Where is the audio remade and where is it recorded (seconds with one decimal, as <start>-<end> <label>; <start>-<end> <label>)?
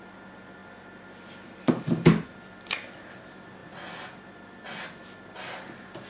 0.0-6.1 recorded